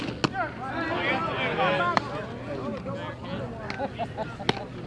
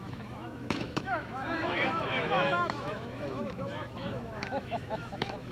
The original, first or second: first